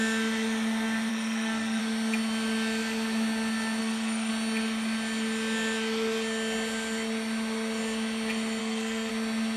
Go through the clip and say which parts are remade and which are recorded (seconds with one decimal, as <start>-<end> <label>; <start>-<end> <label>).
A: 0.0-1.1 recorded; 1.1-1.8 remade; 1.8-3.8 recorded; 3.8-4.3 remade; 4.3-8.6 recorded; 8.6-9.1 remade; 9.1-9.6 recorded